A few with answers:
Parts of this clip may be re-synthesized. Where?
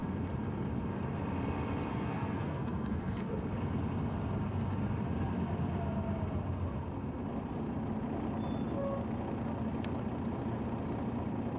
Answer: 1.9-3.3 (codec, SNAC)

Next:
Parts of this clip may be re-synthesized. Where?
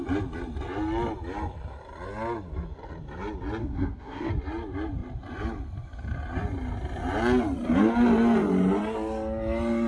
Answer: 3.6-4.3 (codec, SNAC)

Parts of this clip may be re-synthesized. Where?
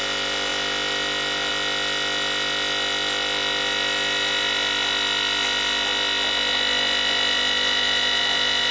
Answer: none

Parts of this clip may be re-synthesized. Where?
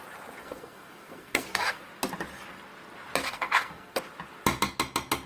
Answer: 0.4-1.8 (codec, SNAC); 3.2-4.0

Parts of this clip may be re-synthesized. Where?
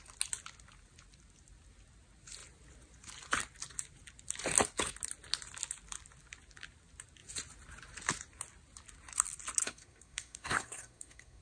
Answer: 9.6-11.4 (codec, SNAC)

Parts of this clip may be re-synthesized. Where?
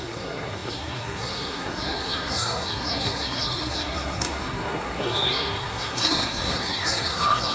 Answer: 0.0-7.5 (codec, SNAC)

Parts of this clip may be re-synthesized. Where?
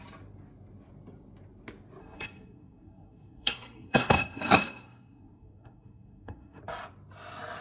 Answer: 2.0-6.6 (codec, SNAC)